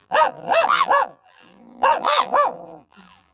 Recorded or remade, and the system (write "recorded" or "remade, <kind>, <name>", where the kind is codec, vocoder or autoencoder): remade, vocoder, BigVGAN v2